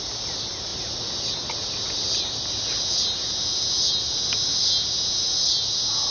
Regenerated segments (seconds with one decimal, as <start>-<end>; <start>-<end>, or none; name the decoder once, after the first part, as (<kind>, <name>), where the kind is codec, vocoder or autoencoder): none